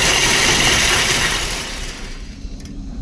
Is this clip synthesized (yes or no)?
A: yes